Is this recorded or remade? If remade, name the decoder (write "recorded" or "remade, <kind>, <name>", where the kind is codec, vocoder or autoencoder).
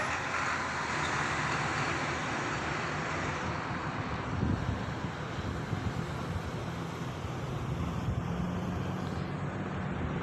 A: recorded